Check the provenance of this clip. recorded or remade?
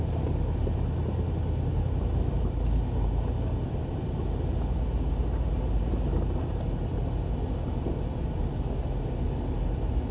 recorded